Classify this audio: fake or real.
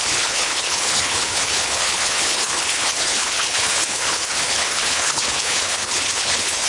fake